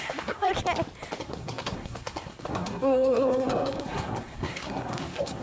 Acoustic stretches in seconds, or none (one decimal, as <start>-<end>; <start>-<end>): 0.5-1.2